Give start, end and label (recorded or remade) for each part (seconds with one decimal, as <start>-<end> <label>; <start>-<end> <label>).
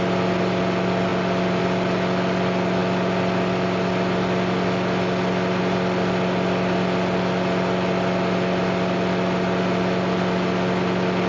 0.0-11.3 recorded